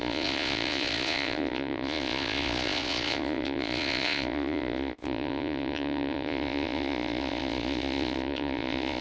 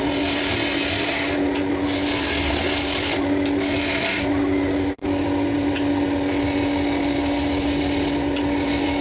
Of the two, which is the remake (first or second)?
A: first